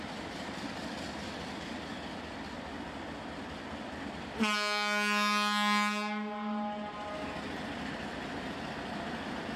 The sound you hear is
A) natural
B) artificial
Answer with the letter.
A